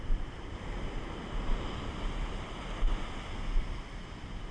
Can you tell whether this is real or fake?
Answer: real